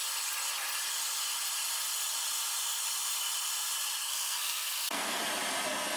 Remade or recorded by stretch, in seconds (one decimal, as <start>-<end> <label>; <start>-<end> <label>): 0.0-4.0 recorded; 4.0-5.2 remade; 5.2-6.0 recorded